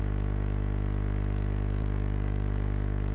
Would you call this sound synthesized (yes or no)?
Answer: yes